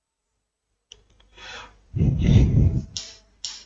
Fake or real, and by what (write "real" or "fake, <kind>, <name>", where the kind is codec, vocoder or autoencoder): fake, vocoder, BigVGAN v2